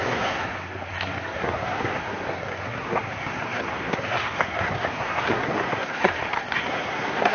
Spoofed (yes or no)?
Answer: yes